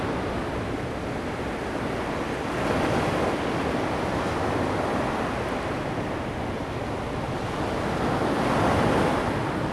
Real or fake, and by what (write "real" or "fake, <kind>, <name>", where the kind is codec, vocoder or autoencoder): real